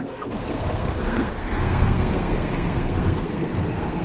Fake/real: fake